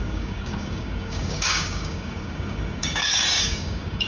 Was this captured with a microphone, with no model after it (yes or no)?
no